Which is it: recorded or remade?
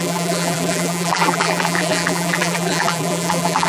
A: remade